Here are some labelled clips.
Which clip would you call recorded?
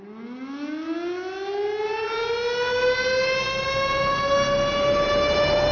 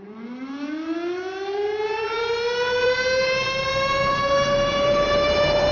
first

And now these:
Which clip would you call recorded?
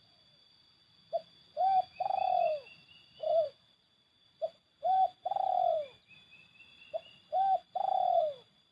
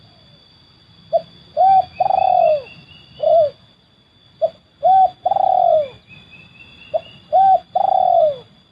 second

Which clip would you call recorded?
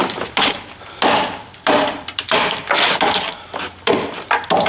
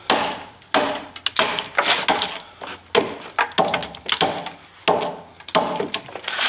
second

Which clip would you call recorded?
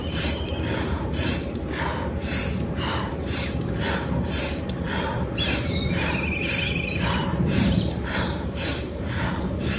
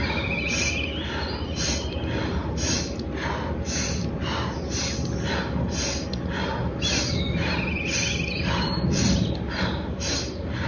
second